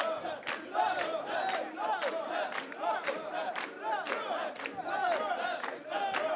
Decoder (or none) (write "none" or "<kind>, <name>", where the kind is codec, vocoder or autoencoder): none